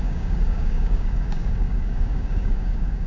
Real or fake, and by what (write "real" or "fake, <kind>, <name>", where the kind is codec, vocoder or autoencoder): fake, codec, DAC